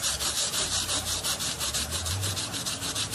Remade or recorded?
remade